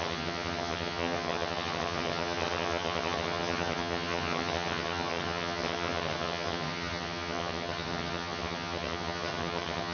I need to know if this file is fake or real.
fake